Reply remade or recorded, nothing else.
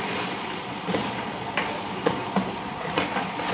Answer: remade